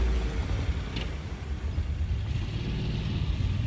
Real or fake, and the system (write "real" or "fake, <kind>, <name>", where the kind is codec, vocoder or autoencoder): real